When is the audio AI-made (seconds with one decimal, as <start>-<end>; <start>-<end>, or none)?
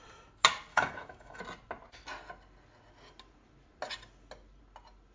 0.7-1.4